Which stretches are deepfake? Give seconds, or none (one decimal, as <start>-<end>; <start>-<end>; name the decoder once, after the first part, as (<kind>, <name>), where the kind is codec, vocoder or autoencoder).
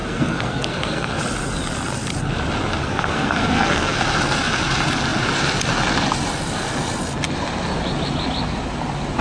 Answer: 0.0-1.2 (codec, SNAC); 2.8-4.0